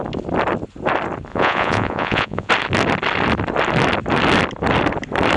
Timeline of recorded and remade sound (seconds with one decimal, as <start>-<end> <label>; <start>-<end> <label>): 0.0-1.3 recorded; 1.3-2.5 remade; 2.5-5.4 recorded